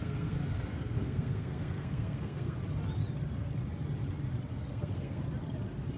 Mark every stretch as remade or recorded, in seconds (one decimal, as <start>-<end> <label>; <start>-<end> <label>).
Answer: 0.0-2.6 remade; 2.6-4.5 recorded; 4.5-5.2 remade; 5.2-6.0 recorded